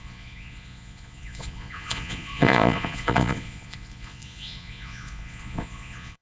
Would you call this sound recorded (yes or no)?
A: no